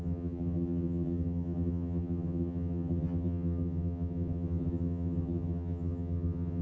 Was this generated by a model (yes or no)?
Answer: yes